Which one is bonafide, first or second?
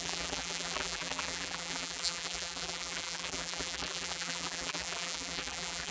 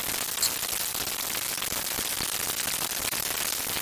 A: second